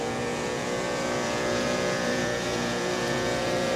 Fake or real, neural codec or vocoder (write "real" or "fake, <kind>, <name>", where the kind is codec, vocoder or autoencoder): fake, vocoder, Vocos